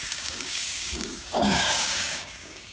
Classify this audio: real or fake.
fake